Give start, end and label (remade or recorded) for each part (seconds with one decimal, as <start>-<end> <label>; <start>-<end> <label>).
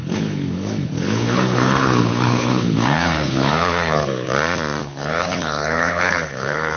0.0-4.3 remade; 4.3-4.8 recorded; 4.8-6.8 remade